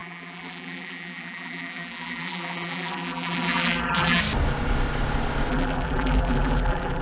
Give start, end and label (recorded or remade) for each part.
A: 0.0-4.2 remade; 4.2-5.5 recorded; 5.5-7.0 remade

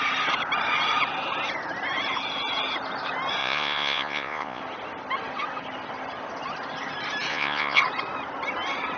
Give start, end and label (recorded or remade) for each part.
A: 0.0-3.4 recorded; 3.4-4.6 remade; 4.6-7.3 recorded; 7.3-7.8 remade; 7.8-9.0 recorded

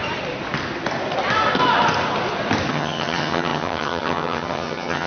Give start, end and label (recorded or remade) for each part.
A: 0.0-2.7 recorded; 2.7-5.1 remade

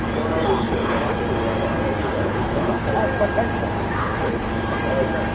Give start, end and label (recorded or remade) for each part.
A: 0.0-0.6 recorded; 0.6-1.1 remade; 1.1-2.0 recorded; 2.0-2.9 remade; 2.9-4.0 recorded; 4.0-4.5 remade; 4.5-5.3 recorded